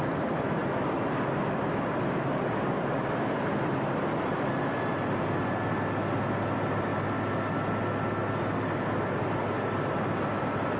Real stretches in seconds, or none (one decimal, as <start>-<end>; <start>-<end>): 0.0-10.8